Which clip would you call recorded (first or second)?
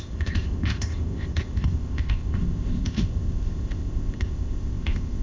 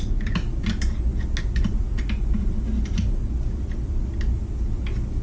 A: second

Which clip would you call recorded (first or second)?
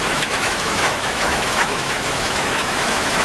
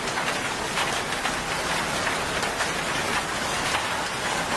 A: second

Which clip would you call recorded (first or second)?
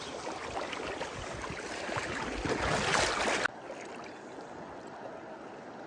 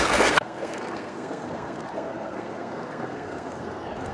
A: first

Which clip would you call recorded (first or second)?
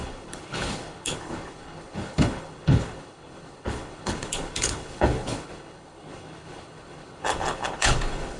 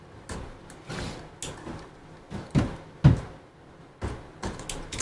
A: second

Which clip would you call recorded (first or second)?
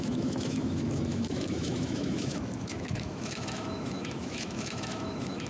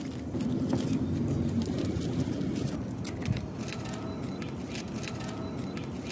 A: second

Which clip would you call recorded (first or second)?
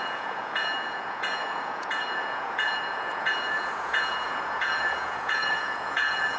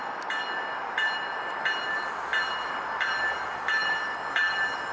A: second